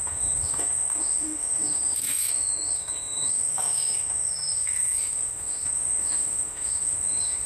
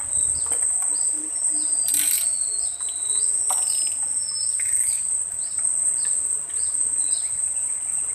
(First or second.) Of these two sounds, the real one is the second